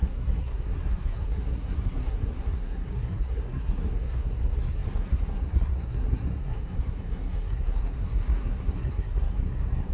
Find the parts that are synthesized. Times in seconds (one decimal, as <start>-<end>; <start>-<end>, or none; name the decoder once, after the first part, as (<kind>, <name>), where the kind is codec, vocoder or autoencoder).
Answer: 0.0-9.9 (codec, SNAC)